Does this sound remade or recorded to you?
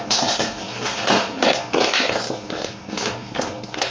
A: remade